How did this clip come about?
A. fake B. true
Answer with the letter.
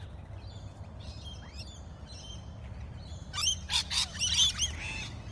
B